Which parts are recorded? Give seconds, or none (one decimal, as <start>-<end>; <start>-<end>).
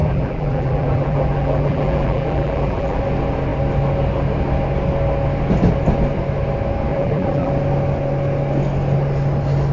3.0-6.9; 7.5-9.7